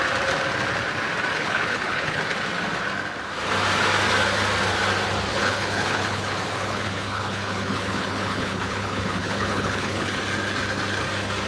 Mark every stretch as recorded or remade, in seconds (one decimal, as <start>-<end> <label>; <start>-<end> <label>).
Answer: 0.0-1.3 recorded; 1.3-2.2 remade; 2.2-5.3 recorded; 5.3-10.2 remade; 10.2-11.5 recorded